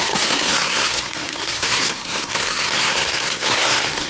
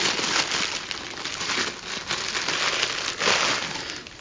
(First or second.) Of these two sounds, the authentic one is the second